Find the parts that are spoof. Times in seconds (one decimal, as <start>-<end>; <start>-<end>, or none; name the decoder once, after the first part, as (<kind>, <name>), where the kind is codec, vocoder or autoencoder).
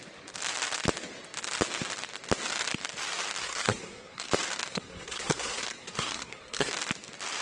3.4-4.3 (codec, SNAC); 4.7-6.7